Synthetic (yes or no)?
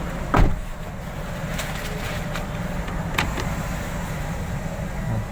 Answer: no